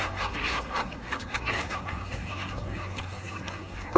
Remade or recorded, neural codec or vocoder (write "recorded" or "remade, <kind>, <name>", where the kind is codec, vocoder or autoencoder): remade, codec, SNAC